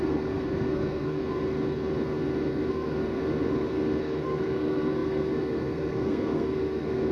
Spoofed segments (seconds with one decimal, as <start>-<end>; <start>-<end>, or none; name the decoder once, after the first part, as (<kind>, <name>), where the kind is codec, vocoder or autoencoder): 0.0-1.2 (codec, SNAC); 2.7-3.2; 4.0-7.1